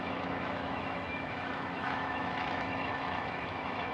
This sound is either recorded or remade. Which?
remade